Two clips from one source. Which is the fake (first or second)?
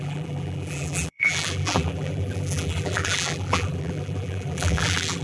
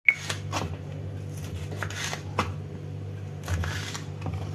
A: first